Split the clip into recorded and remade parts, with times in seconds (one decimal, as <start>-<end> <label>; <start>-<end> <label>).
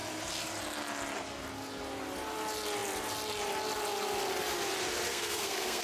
0.0-5.1 recorded; 5.1-5.8 remade